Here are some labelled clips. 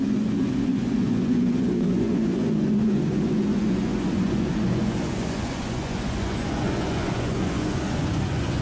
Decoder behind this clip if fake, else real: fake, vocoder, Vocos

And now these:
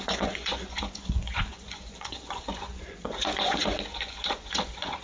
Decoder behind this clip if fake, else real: fake, vocoder, Vocos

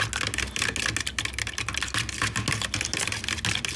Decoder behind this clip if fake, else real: real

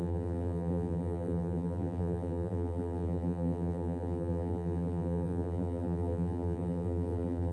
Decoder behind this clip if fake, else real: fake, vocoder, BigVGAN v2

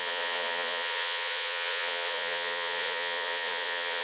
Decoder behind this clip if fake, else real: fake, vocoder, Vocos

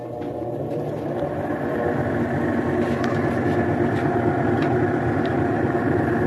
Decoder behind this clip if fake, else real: real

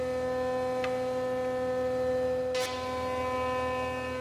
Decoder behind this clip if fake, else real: real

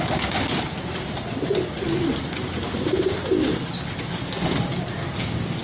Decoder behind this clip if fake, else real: real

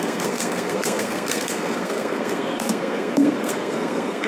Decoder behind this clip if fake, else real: fake, codec, SNAC